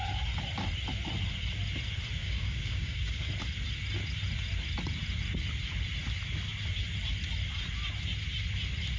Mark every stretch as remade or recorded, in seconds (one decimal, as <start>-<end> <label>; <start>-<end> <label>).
0.0-2.2 recorded; 2.2-3.3 remade; 3.3-9.0 recorded